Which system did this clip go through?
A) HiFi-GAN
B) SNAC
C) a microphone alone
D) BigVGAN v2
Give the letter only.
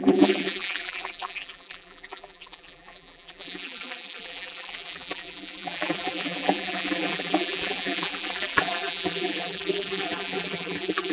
D